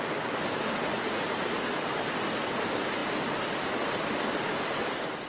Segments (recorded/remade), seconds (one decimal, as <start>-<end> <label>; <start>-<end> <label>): 0.0-0.9 recorded; 0.9-1.4 remade; 1.4-5.3 recorded